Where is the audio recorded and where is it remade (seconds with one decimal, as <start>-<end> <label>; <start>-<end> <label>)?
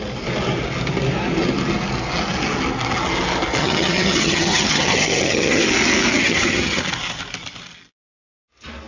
0.0-3.6 recorded; 3.6-5.6 remade; 5.6-6.1 recorded; 6.1-6.8 remade; 6.8-8.9 recorded